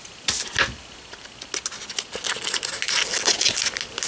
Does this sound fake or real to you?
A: real